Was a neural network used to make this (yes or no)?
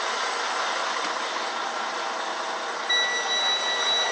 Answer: no